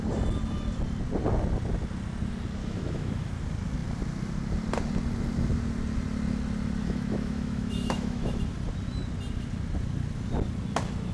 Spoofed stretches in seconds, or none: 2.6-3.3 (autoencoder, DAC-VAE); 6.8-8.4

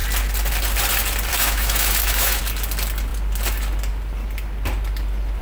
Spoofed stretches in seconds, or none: 1.3-2.4 (autoencoder, DAC-VAE)

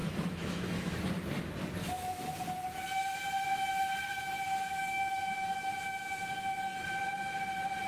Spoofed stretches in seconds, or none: 0.0-1.0 (autoencoder, DAC-VAE); 1.8-2.3; 4.1-6.8